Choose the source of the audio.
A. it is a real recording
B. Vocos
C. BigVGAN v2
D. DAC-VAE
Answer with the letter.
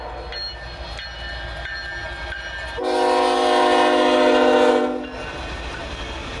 A